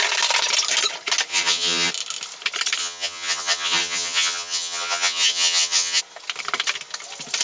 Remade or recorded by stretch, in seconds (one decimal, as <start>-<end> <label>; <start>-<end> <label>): 0.0-1.3 recorded; 1.3-1.9 remade; 1.9-2.8 recorded; 2.8-6.0 remade; 6.0-7.4 recorded